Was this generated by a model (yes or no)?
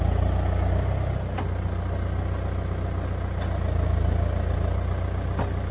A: no